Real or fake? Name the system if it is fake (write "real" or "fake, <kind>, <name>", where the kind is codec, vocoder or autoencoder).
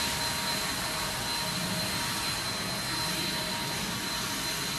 real